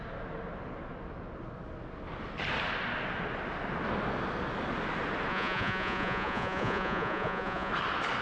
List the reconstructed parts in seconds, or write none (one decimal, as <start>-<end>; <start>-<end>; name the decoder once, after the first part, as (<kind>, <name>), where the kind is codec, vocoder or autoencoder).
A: 5.3-7.7 (vocoder, Vocos)